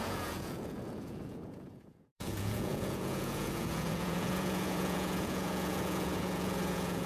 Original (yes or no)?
no